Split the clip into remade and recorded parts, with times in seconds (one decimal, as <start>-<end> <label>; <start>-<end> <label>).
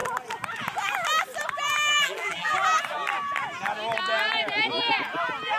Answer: 0.0-1.9 recorded; 1.9-2.5 remade; 2.5-5.6 recorded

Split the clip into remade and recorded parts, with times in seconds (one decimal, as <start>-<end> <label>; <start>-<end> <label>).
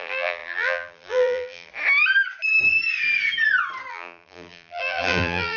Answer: 0.0-1.7 remade; 1.7-3.9 recorded; 3.9-5.6 remade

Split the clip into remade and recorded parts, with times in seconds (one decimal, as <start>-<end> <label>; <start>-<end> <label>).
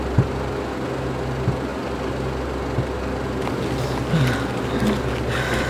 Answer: 0.0-5.7 recorded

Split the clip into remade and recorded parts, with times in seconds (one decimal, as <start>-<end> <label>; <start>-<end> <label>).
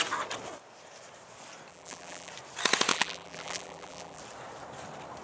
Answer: 0.0-1.7 recorded; 1.7-2.3 remade; 2.3-2.9 recorded; 2.9-4.2 remade; 4.2-5.2 recorded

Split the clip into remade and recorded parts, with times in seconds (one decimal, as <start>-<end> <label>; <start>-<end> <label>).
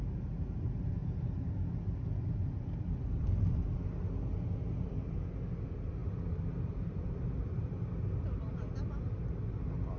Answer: 0.0-6.0 recorded; 6.0-7.7 remade; 7.7-10.0 recorded